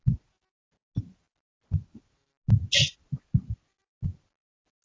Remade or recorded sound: recorded